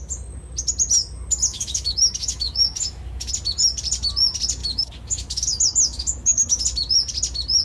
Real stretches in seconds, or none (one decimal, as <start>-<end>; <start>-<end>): 0.0-1.5; 3.3-4.6; 6.6-7.6